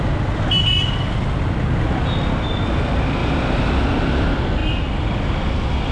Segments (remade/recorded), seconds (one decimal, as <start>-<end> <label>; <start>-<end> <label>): 0.0-3.2 recorded; 3.2-3.9 remade; 3.9-5.9 recorded